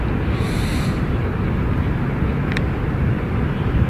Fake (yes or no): no